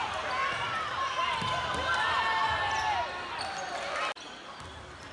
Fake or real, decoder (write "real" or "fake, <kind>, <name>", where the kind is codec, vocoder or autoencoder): real